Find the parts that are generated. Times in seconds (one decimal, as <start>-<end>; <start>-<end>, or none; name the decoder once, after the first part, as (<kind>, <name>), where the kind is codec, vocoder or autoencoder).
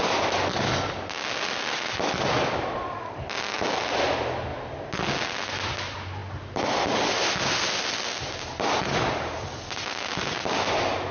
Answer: none